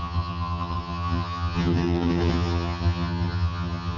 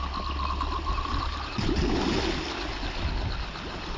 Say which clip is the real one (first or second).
second